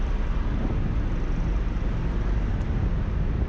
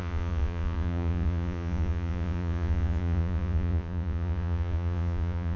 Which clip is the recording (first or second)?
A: first